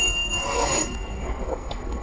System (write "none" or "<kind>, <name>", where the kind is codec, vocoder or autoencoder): codec, SNAC